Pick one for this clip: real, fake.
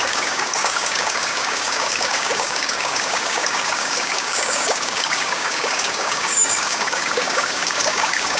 fake